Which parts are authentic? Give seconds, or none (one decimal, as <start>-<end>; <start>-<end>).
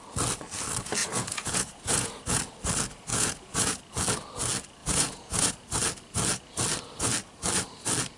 0.0-1.0; 2.4-3.1; 3.8-4.8; 5.5-8.2